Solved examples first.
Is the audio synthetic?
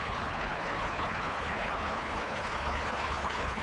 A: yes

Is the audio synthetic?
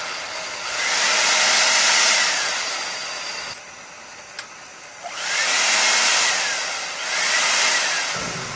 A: no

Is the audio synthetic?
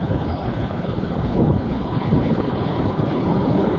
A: yes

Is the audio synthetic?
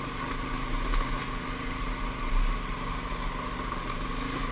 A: no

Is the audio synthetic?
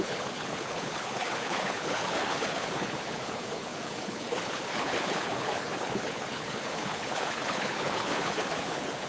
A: yes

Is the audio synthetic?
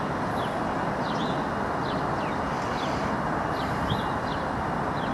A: no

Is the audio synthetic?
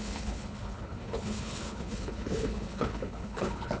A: yes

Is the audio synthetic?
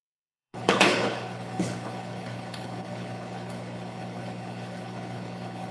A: yes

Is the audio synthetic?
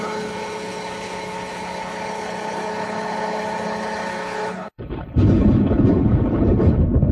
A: yes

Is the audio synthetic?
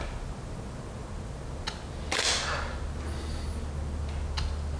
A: no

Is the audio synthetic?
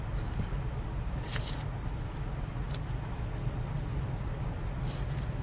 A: no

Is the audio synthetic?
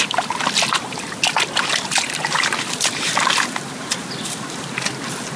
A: no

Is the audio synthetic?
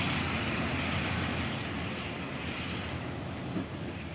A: no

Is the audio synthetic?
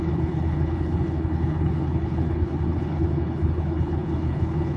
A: yes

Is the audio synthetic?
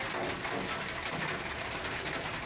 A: no